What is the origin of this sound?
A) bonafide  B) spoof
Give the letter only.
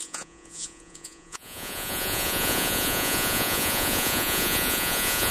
B